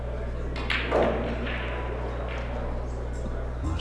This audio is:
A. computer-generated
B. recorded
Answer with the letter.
B